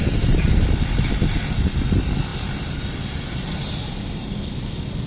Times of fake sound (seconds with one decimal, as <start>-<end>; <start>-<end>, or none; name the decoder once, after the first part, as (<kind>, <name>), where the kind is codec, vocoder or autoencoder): none